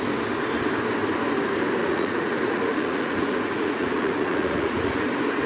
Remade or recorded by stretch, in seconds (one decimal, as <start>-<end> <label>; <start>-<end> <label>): 0.0-1.8 recorded; 1.8-5.1 remade; 5.1-5.5 recorded